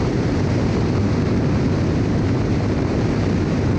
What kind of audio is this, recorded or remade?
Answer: remade